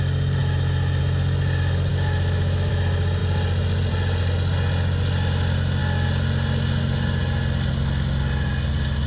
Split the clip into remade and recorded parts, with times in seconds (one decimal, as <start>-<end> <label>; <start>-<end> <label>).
0.0-1.9 recorded; 1.9-2.7 remade; 2.7-9.1 recorded